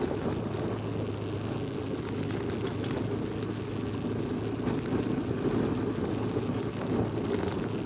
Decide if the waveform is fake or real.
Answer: real